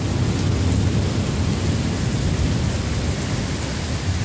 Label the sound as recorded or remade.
recorded